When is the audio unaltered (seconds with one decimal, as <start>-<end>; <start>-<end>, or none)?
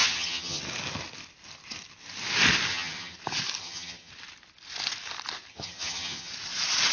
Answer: 0.6-2.7; 3.2-3.6; 4.1-5.5; 6.3-6.9